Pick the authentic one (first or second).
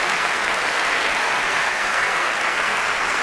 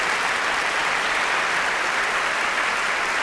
second